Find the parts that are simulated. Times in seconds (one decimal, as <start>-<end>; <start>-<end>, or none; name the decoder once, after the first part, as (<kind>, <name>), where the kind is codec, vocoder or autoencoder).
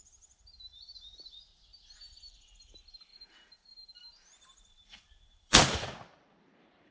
0.0-6.9 (vocoder, BigVGAN v2)